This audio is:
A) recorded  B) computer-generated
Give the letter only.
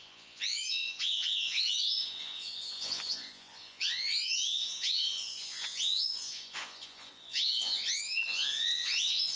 B